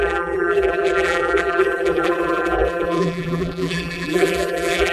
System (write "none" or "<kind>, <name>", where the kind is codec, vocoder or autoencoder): vocoder, BigVGAN v2